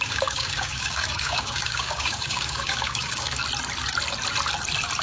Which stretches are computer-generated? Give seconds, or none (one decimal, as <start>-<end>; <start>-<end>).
0.0-3.4